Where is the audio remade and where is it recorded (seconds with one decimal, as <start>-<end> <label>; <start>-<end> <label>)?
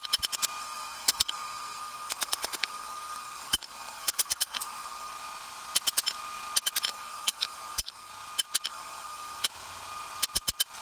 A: 0.0-0.6 recorded; 0.6-5.1 remade; 5.1-6.9 recorded; 6.9-8.1 remade; 8.1-8.7 recorded; 8.7-9.4 remade; 9.4-10.8 recorded